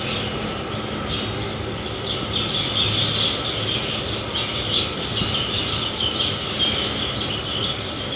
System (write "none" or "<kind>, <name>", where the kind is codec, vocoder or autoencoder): none